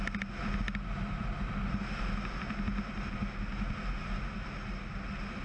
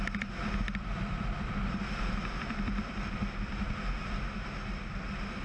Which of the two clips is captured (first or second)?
first